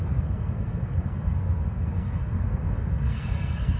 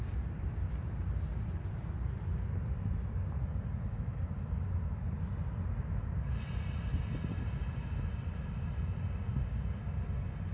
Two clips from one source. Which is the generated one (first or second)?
first